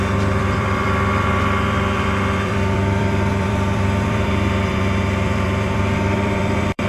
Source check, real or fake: fake